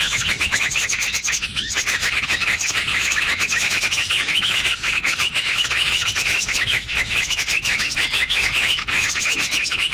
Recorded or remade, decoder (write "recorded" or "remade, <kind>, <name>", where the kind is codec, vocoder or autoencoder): remade, autoencoder, DAC-VAE